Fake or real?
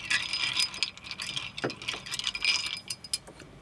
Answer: real